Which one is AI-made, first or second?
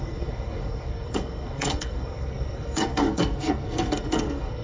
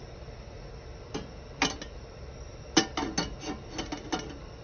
first